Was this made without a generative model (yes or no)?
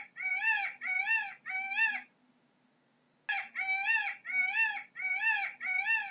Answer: yes